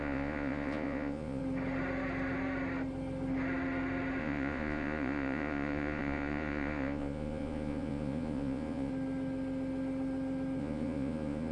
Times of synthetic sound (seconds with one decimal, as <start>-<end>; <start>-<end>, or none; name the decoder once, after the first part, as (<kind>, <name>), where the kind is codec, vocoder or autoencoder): 0.0-1.4 (vocoder, Vocos); 4.2-8.9; 10.6-11.5